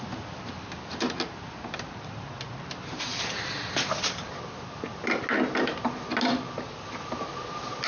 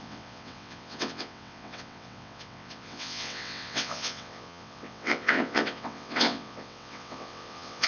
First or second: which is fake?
second